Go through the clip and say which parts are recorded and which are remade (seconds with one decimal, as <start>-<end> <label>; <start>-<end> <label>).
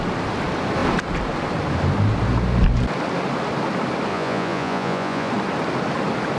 0.0-4.1 recorded; 4.1-5.3 remade; 5.3-6.4 recorded